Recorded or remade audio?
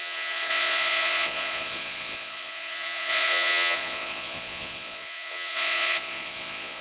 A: remade